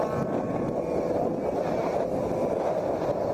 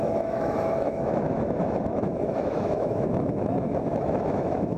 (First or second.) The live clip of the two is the first